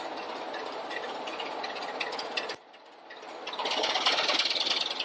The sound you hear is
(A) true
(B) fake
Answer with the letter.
A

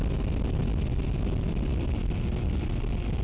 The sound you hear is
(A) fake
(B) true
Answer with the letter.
B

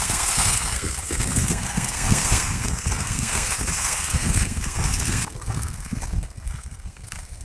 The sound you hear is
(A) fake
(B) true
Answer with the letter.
A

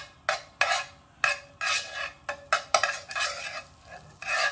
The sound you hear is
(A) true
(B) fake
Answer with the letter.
A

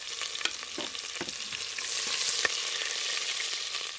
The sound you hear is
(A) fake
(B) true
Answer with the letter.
B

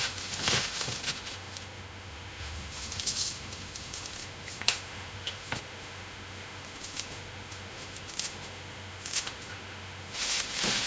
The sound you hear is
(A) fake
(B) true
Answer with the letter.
A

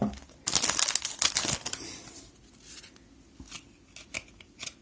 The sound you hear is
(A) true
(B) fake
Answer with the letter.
A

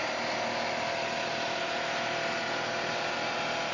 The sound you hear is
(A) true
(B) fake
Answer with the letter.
A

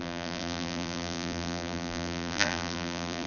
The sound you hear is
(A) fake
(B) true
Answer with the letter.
A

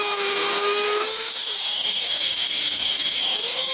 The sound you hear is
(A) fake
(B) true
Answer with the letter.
A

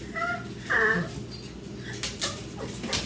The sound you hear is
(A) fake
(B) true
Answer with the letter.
B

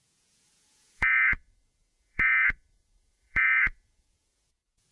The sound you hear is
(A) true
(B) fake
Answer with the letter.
B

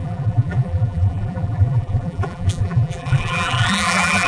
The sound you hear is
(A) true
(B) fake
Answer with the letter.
B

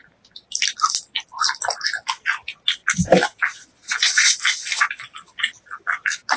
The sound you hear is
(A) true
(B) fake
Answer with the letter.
A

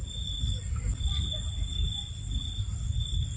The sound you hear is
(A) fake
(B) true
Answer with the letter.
B